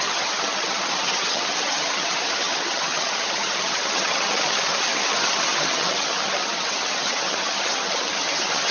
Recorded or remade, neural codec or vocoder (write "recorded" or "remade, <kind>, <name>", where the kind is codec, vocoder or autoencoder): remade, vocoder, HiFi-GAN